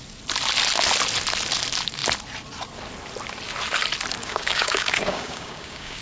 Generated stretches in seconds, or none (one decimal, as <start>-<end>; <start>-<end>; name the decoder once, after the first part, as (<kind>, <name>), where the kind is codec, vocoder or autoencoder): 4.2-6.0 (codec, DAC)